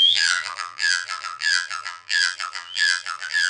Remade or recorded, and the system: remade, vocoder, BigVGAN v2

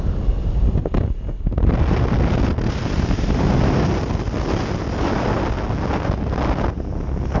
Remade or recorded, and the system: recorded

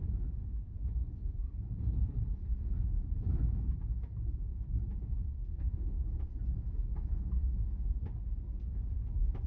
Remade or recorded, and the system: remade, vocoder, BigVGAN v2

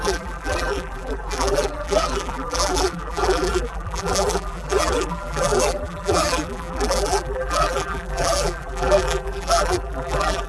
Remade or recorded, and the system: remade, vocoder, BigVGAN v2